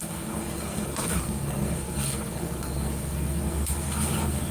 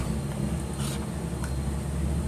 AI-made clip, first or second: first